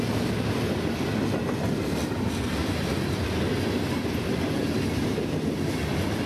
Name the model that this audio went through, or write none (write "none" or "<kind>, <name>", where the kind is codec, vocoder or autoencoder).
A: none